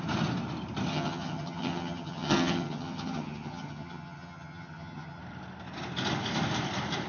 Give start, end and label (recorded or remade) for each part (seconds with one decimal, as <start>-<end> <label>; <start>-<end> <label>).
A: 0.0-0.9 recorded; 0.9-5.2 remade; 5.2-7.1 recorded